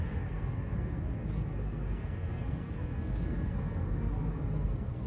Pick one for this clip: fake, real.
fake